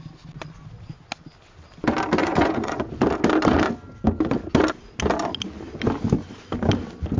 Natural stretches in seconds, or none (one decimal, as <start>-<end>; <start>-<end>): 0.0-2.2; 2.9-7.2